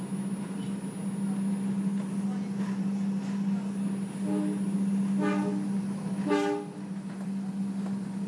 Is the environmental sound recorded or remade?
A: recorded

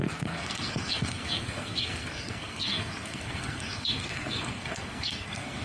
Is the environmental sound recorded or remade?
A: remade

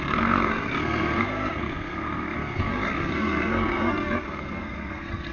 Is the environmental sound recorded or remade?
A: remade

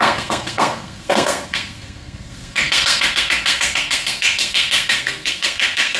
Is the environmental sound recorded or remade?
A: remade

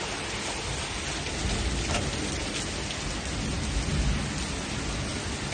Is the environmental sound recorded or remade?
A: recorded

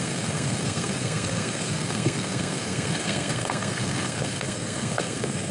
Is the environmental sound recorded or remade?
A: remade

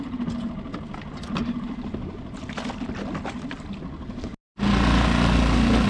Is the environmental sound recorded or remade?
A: recorded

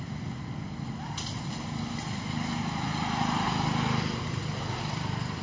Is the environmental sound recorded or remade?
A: recorded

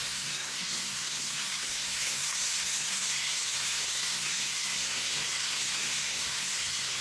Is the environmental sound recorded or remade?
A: remade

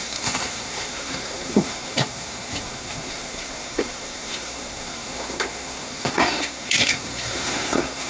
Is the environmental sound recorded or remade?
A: remade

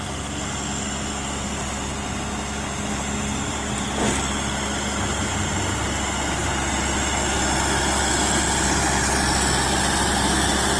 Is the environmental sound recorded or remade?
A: recorded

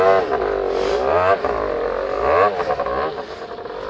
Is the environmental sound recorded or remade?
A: recorded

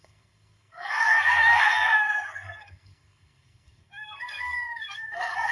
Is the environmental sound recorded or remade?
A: remade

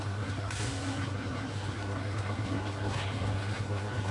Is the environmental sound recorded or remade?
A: remade